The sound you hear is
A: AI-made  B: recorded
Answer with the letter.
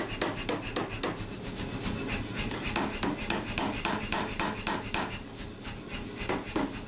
B